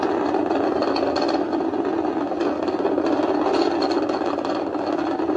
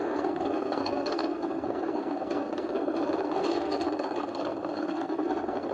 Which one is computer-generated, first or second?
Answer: second